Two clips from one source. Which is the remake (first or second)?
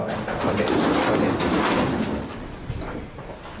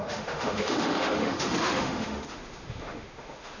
second